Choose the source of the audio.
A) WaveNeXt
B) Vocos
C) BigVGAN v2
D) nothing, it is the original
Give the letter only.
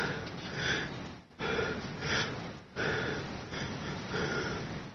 D